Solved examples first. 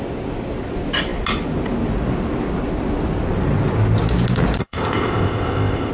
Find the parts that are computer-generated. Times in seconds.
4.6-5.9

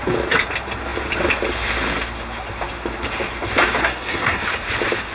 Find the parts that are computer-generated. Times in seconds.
3.8-4.4

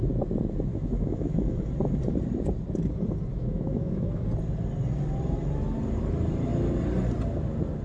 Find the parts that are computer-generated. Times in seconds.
0.7-1.6; 3.3-4.2

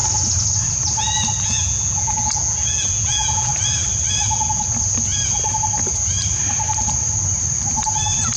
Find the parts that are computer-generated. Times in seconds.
1.4-3.5

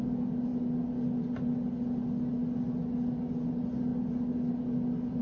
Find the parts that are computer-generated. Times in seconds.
none